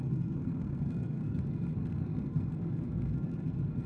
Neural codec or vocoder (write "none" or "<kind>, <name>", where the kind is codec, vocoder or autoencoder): codec, SNAC